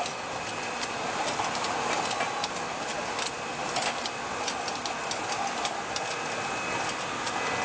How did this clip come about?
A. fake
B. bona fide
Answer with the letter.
B